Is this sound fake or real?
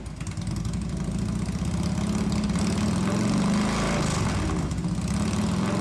real